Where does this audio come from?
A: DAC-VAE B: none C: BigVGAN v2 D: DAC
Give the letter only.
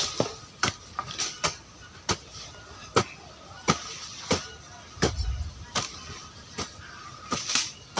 B